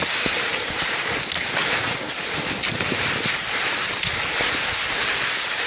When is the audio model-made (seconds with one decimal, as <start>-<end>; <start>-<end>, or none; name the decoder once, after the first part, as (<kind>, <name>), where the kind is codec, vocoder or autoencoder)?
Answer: none